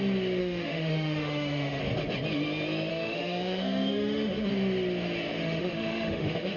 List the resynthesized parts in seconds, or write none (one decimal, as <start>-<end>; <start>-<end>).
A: 0.4-1.8; 2.9-4.5; 5.4-6.6